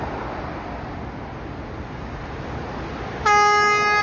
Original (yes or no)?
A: yes